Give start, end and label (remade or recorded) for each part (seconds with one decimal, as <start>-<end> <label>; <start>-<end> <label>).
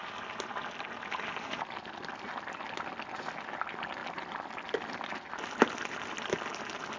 0.0-7.0 recorded